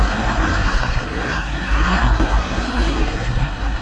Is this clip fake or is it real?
fake